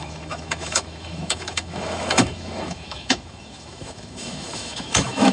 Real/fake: fake